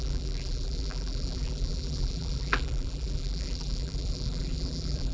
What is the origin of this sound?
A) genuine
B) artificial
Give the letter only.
B